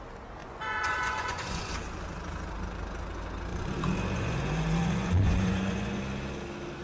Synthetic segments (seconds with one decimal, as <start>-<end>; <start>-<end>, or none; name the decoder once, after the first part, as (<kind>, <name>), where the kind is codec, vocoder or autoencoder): 0.4-1.7 (vocoder, Vocos); 3.5-6.0